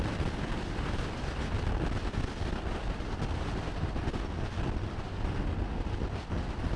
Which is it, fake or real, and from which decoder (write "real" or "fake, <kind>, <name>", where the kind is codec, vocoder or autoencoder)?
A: fake, vocoder, BigVGAN v2